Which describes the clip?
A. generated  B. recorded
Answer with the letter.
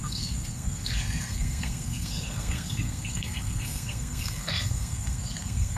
A